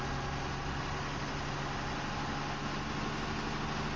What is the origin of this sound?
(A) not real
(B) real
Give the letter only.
B